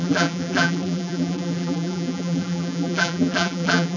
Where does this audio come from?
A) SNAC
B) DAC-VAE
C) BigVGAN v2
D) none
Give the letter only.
C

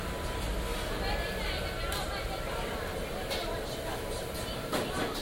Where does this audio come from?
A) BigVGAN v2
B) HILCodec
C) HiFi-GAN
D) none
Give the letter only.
D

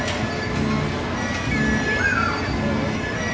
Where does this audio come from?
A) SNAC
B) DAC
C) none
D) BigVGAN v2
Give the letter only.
C